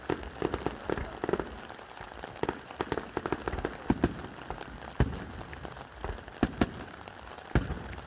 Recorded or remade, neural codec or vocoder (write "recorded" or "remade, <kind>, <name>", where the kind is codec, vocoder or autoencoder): recorded